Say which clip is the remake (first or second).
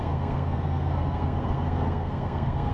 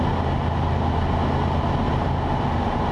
first